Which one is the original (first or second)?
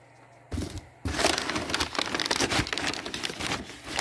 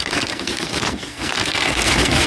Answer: first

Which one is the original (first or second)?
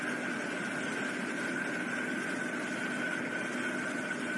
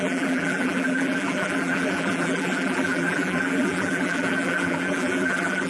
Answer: first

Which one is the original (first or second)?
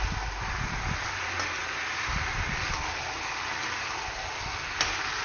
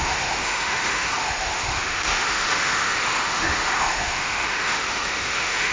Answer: first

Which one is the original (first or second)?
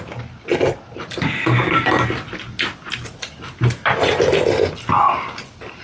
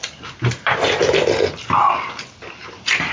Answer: first